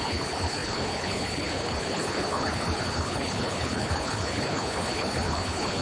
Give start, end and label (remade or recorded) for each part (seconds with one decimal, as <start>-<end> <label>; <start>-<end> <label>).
0.0-5.8 remade